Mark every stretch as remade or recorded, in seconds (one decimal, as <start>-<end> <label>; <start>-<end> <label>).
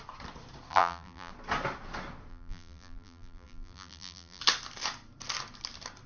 0.0-0.7 recorded; 0.7-1.3 remade; 1.3-2.3 recorded; 2.3-4.4 remade; 4.4-6.1 recorded